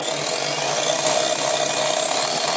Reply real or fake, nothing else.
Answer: real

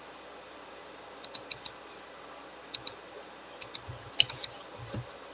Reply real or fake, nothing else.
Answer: real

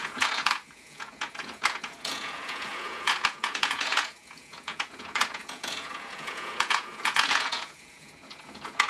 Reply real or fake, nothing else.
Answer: fake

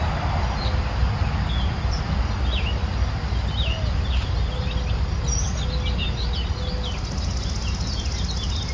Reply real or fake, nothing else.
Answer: real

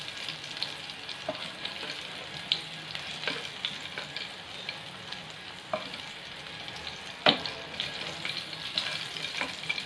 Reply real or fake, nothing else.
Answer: real